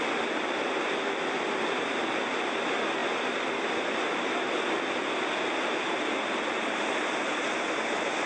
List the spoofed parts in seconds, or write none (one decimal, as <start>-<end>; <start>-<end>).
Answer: none